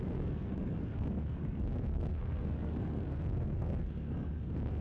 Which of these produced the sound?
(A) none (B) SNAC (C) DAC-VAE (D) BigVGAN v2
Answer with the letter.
B